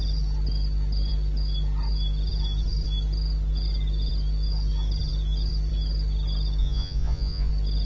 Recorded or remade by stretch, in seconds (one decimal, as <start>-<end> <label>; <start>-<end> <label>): 0.0-6.6 recorded; 6.6-7.5 remade; 7.5-7.9 recorded